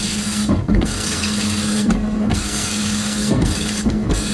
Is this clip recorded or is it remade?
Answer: remade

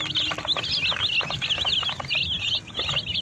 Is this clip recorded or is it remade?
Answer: recorded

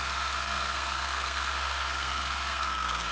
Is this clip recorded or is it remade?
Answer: remade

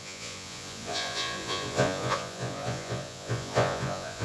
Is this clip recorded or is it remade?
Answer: remade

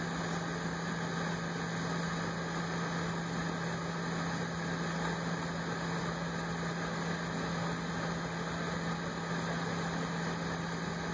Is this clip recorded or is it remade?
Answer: recorded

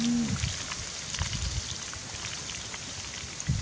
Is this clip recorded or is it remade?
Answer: recorded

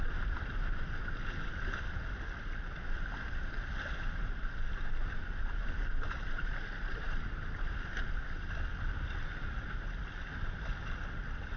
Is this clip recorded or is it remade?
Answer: recorded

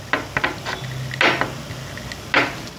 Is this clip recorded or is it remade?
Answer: recorded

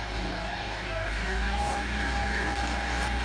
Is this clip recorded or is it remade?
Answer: remade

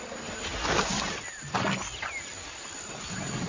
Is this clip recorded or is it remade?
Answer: recorded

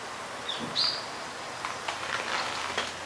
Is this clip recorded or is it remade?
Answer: recorded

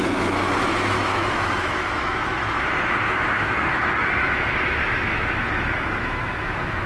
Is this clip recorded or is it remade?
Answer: remade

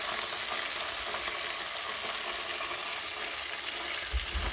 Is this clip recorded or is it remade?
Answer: recorded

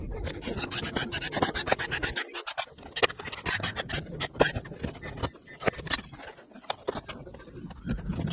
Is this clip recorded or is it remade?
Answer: recorded